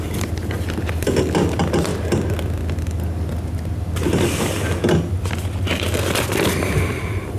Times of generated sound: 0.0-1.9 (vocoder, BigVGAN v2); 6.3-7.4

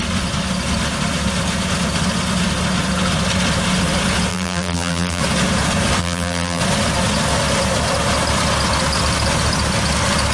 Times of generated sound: 4.3-5.2 (vocoder, BigVGAN v2); 6.0-6.6

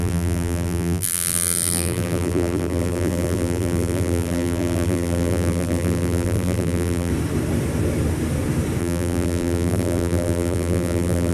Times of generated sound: 0.0-7.1 (vocoder, BigVGAN v2); 8.8-11.3

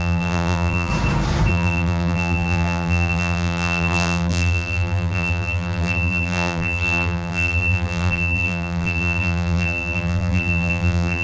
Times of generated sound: 0.0-0.9 (vocoder, BigVGAN v2); 1.5-11.2